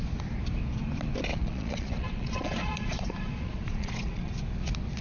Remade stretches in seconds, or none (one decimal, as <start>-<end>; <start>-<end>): 1.3-4.3